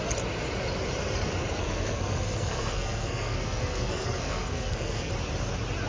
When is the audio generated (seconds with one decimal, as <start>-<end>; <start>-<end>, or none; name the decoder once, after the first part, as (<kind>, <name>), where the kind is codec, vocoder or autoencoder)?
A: 1.6-5.1 (codec, SNAC)